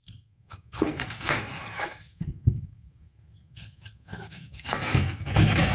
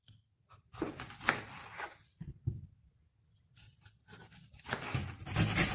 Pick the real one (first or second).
second